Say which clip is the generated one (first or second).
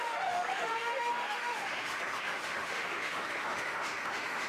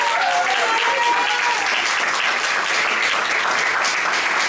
first